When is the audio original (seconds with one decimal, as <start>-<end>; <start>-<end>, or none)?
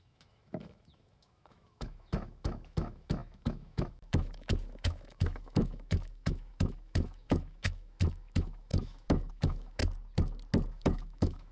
9.8-10.7